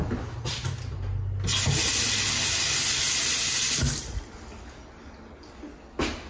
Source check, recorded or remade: recorded